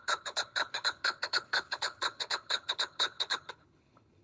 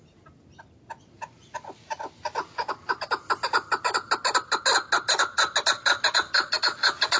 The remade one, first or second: first